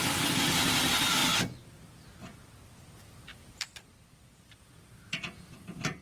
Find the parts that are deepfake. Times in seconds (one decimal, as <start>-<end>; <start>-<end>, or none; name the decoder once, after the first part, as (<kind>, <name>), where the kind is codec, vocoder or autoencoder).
3.3-5.4 (vocoder, BigVGAN v2)